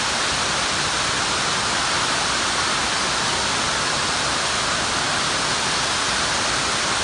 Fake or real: real